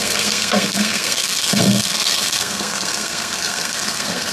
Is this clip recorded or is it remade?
remade